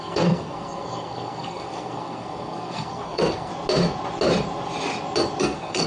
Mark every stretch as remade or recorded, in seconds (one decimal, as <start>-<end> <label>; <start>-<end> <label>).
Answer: 0.0-3.5 remade; 3.5-5.4 recorded; 5.4-5.9 remade